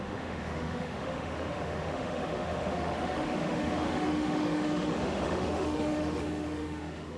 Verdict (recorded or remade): remade